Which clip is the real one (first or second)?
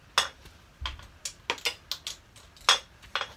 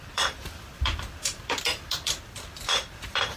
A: first